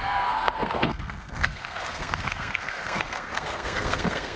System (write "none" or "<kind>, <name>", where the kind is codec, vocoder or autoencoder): codec, SNAC